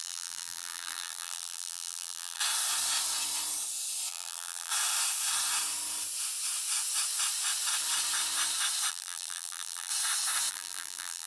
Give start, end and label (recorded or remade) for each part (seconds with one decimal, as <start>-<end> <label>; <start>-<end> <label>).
0.0-2.4 remade; 2.4-4.1 recorded; 4.1-4.7 remade; 4.7-8.9 recorded; 8.9-9.9 remade; 9.9-10.5 recorded; 10.5-11.3 remade